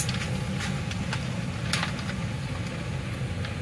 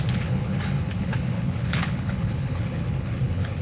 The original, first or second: first